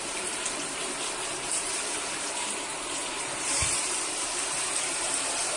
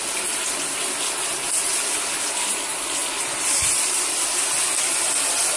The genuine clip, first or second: second